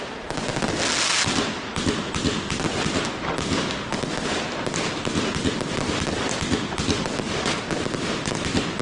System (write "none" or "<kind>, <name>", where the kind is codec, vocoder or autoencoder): none